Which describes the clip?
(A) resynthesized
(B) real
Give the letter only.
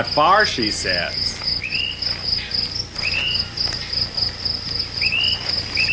B